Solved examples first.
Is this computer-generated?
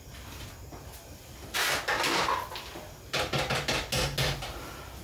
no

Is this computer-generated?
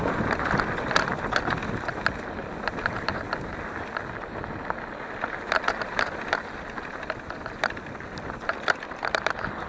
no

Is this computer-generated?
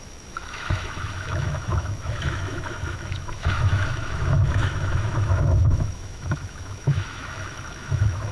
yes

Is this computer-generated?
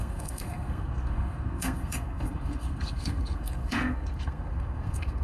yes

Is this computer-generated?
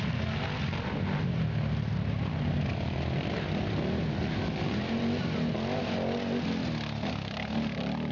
no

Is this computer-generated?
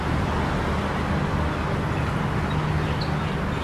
no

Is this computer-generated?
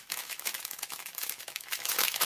yes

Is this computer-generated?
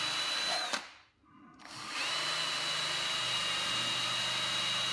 no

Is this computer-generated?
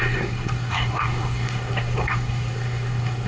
yes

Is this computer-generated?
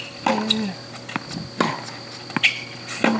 no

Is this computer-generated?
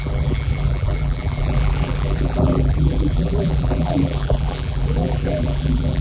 yes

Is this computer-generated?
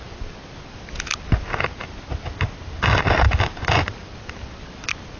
no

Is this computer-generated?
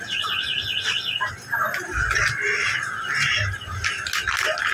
no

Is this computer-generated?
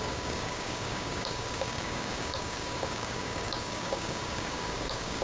yes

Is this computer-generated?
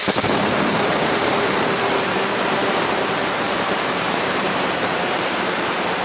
yes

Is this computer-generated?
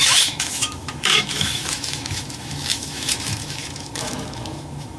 yes